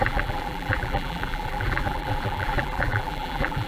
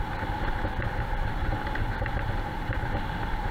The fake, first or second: first